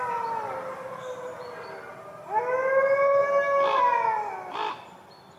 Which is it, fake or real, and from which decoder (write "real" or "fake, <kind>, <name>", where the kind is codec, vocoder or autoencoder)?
real